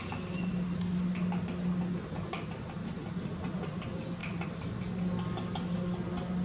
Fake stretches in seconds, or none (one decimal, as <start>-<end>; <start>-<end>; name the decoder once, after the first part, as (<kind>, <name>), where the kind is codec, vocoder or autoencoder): none